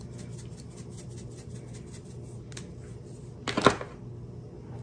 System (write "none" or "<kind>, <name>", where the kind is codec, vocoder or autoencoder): none